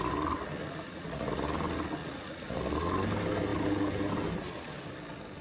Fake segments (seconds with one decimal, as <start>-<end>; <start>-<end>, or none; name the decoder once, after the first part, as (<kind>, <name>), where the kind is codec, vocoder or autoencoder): 0.6-1.3 (vocoder, Vocos); 2.0-2.6